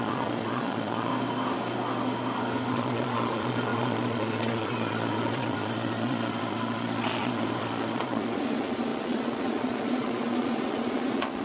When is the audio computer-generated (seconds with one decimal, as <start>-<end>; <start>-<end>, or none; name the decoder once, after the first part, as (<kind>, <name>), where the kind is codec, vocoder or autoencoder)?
0.0-1.1 (vocoder, Vocos); 2.7-11.4